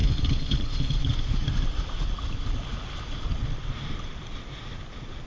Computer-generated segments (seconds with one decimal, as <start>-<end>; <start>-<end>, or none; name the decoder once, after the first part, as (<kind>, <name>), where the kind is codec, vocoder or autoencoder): 0.0-1.0 (codec, HILCodec)